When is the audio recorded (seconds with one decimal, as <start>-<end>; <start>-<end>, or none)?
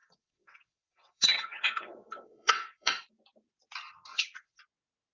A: 3.1-4.1; 4.6-5.1